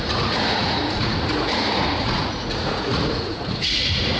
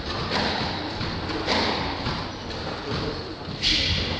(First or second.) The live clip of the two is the second